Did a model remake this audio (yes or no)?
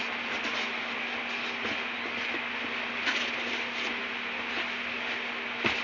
no